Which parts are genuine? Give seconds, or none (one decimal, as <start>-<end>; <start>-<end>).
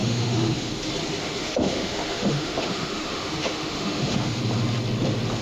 0.7-1.2; 4.4-5.4